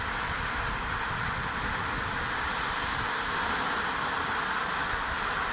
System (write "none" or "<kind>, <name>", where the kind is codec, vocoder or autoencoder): none